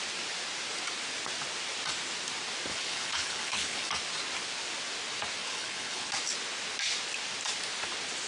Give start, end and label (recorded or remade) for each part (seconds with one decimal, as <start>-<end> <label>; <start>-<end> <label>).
0.0-2.7 recorded; 2.7-3.9 remade; 3.9-5.4 recorded; 5.4-6.1 remade; 6.1-8.3 recorded